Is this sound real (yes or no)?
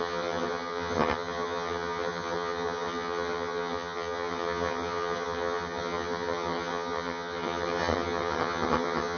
no